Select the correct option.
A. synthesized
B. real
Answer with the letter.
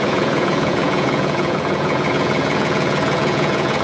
A